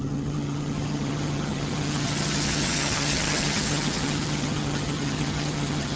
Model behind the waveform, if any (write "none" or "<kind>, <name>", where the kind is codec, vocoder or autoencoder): vocoder, HiFi-GAN